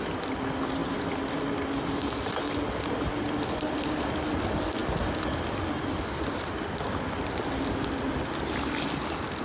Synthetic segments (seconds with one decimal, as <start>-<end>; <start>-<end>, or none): none